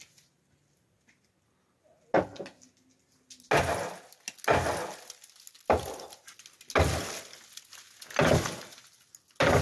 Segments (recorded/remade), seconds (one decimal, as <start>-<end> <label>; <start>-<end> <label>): 0.0-9.6 recorded

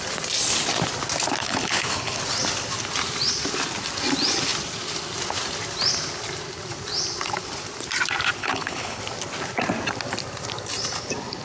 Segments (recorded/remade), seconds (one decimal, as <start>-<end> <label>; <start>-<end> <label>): 0.0-1.4 recorded; 1.4-2.2 remade; 2.2-8.4 recorded; 8.4-9.0 remade; 9.0-11.4 recorded

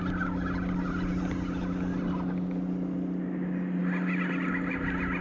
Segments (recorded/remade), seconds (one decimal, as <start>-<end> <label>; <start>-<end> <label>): 0.0-5.2 recorded

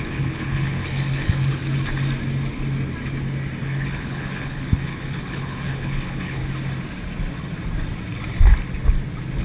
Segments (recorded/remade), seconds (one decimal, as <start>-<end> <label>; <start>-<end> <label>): 0.0-1.6 remade; 1.6-3.6 recorded; 3.6-6.4 remade; 6.4-9.4 recorded

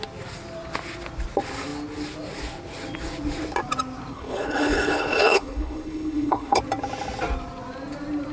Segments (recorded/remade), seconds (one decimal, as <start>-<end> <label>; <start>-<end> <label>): 0.0-4.1 recorded; 4.1-6.6 remade; 6.6-8.3 recorded

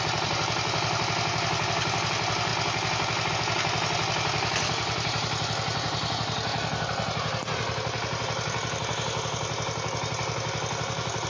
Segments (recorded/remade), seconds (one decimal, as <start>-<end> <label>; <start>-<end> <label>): 0.0-11.3 recorded

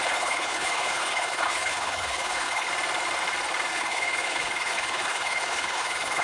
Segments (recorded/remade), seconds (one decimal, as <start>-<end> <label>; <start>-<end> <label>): 0.0-2.7 remade; 2.7-3.7 recorded; 3.7-6.2 remade

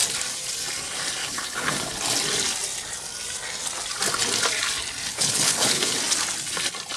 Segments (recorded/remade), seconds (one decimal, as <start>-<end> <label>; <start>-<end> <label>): 0.0-1.2 recorded; 1.2-1.9 remade; 1.9-5.1 recorded; 5.1-6.0 remade; 6.0-7.0 recorded